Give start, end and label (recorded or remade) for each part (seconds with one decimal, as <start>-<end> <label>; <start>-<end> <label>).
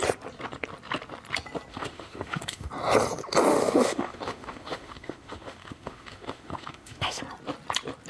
0.0-1.7 recorded; 1.7-2.7 remade; 2.7-3.5 recorded; 3.5-7.2 remade; 7.2-8.1 recorded